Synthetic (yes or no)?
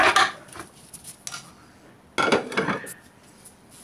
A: no